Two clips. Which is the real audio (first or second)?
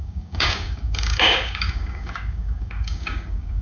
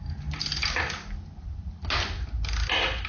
second